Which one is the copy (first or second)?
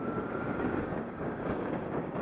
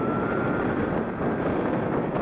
first